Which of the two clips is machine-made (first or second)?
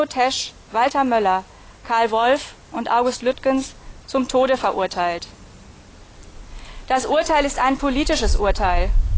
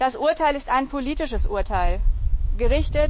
second